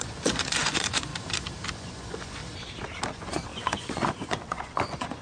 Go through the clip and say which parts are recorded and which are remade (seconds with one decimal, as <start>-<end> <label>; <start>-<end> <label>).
0.0-1.1 remade; 1.1-1.7 recorded; 1.7-2.4 remade; 2.4-3.1 recorded; 3.1-5.2 remade